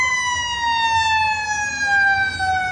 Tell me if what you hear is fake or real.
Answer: real